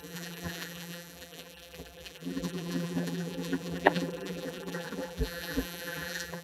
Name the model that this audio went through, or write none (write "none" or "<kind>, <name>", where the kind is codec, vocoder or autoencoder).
vocoder, BigVGAN v2